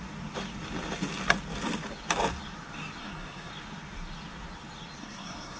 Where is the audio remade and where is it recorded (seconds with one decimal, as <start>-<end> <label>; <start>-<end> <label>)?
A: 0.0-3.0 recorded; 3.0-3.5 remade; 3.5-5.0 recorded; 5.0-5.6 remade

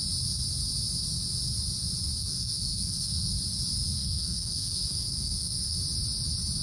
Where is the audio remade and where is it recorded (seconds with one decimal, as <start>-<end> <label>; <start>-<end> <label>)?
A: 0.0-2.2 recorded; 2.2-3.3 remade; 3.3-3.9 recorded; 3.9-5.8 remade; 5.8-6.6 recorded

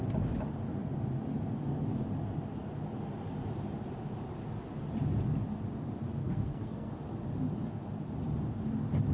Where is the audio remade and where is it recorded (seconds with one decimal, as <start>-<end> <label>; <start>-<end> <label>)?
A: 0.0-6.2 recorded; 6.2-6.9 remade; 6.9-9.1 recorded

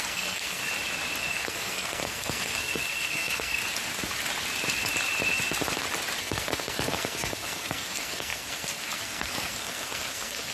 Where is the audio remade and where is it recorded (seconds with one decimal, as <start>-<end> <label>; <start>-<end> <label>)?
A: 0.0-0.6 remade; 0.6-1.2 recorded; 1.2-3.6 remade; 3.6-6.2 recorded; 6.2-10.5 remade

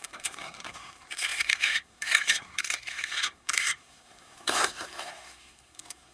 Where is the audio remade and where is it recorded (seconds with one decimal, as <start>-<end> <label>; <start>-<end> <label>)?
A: 0.0-6.1 remade

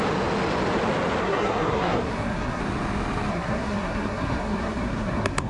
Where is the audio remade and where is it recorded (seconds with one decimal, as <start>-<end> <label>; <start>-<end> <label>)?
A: 0.0-1.2 recorded; 1.2-2.6 remade; 2.6-3.3 recorded; 3.3-5.5 remade

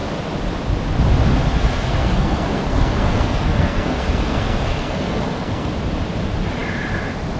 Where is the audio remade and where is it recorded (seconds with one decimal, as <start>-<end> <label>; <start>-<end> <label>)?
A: 0.0-1.3 recorded; 1.3-5.7 remade; 5.7-7.4 recorded